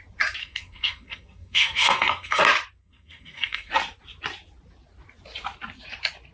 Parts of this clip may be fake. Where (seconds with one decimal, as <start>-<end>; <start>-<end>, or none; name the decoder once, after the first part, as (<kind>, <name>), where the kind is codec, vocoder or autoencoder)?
0.4-2.4 (codec, SNAC); 2.8-3.7